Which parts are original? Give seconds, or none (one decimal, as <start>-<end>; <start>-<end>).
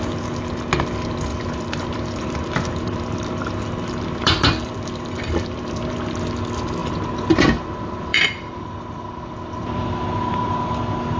0.0-1.3; 5.9-6.8; 7.6-8.1; 10.7-11.2